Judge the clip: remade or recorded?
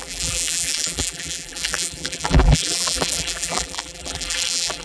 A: remade